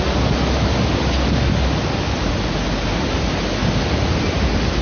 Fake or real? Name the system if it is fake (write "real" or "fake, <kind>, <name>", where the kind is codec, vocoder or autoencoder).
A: real